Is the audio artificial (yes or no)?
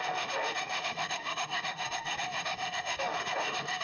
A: yes